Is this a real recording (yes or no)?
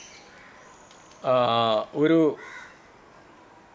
yes